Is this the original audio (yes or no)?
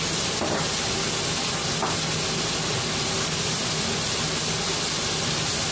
yes